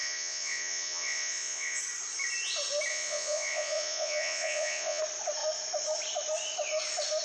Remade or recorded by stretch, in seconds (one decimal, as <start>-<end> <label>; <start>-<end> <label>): 0.0-1.8 remade; 1.8-2.9 recorded; 2.9-5.0 remade; 5.0-7.2 recorded